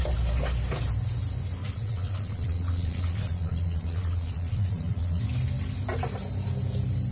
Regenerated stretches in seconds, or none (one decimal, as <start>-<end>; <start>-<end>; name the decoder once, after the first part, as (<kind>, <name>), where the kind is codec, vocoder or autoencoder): 1.6-5.2 (vocoder, Vocos)